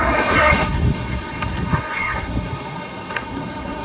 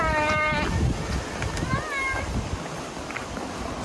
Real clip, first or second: second